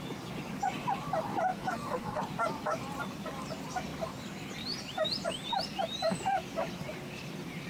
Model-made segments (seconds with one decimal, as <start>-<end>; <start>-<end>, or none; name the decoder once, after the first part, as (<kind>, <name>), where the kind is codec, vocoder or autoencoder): 1.5-2.2 (codec, SNAC)